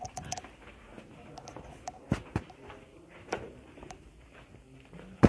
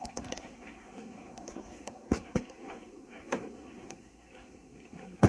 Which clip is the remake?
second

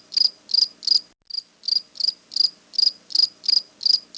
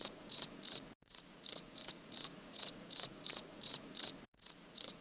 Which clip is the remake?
second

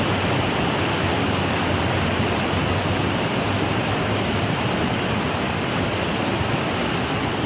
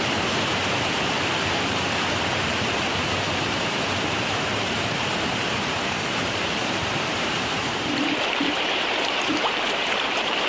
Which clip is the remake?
second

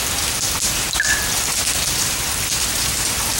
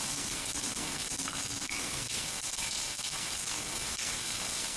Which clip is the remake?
second